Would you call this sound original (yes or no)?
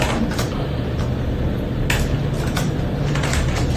yes